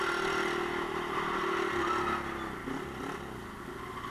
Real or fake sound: real